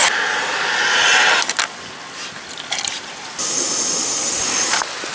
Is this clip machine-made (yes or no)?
no